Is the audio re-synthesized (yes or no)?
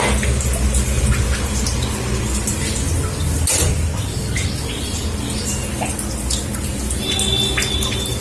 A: no